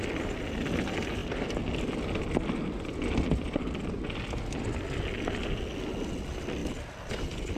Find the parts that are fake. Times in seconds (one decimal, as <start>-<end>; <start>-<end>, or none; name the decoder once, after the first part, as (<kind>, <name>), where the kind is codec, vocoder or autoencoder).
none